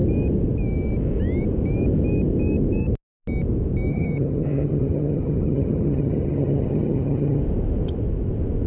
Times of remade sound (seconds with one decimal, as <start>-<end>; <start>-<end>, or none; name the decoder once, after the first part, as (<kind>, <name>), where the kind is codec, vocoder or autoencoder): 3.9-7.4 (vocoder, HiFi-GAN)